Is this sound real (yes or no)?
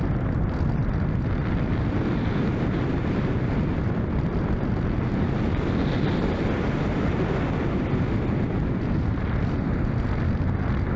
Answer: yes